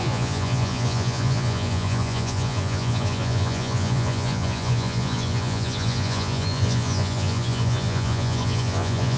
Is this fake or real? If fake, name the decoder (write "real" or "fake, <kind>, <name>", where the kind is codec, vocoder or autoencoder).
fake, vocoder, Vocos